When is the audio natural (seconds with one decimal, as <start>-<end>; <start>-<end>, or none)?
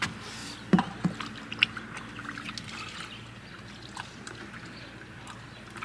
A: 0.0-5.8